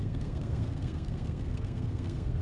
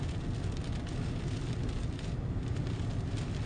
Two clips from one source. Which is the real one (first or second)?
second